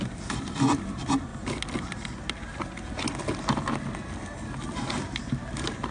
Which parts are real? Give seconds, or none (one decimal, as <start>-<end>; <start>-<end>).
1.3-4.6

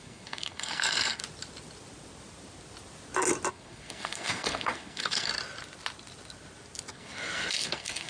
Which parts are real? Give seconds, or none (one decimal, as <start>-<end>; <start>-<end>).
1.2-3.5; 5.3-6.9

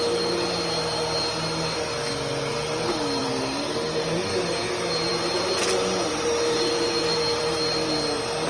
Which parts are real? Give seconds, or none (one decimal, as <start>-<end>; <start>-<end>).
0.0-3.2; 4.3-8.5